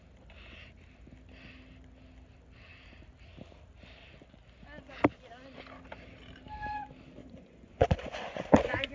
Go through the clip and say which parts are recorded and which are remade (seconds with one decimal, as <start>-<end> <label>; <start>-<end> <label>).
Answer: 0.0-7.2 recorded; 7.2-8.9 remade